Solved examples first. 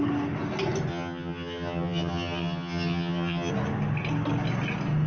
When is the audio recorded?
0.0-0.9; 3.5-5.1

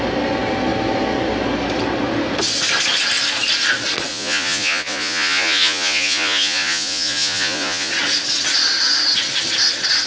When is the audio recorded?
0.0-4.1; 7.9-10.1

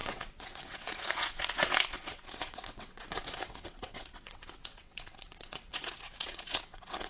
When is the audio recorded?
none

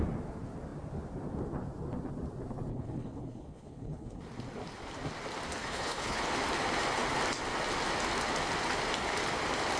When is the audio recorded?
0.0-2.7; 4.2-5.6; 6.2-9.8

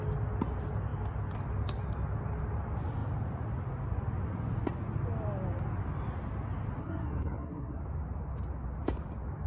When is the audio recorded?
0.0-6.8; 7.8-9.5